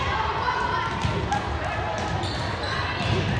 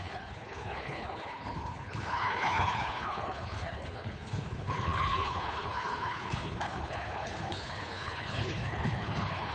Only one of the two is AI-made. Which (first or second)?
second